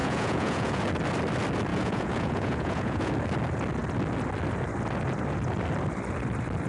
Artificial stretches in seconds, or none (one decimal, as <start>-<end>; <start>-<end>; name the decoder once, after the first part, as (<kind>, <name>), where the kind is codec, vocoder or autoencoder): 0.0-0.8 (vocoder, Vocos); 1.7-3.1